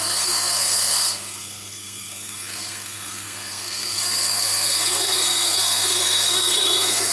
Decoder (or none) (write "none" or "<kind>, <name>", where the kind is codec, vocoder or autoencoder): codec, SNAC